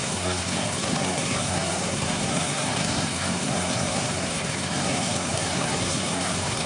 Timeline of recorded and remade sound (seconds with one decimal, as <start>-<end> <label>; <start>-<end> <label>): 0.0-6.7 remade